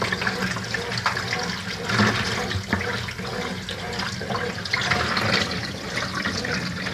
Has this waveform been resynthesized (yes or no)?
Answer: no